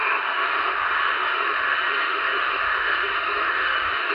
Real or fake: fake